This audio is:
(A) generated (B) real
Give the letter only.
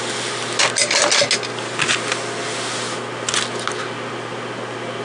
B